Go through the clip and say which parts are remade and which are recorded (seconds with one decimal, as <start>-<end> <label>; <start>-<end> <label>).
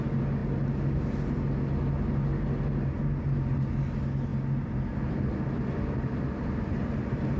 0.0-7.4 recorded